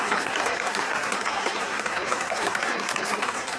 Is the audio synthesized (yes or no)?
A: yes